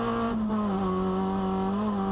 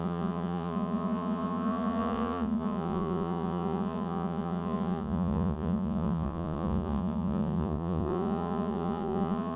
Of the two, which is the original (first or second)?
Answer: first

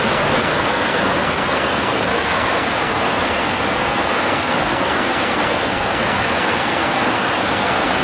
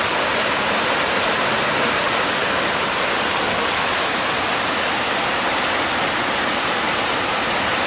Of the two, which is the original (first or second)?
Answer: second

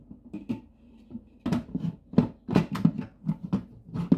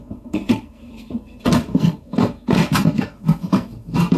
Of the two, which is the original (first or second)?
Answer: first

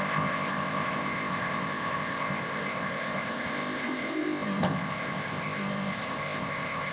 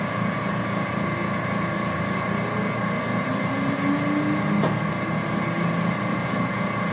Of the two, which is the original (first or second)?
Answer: second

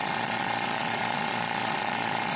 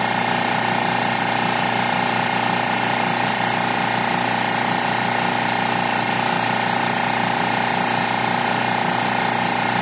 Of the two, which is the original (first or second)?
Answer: second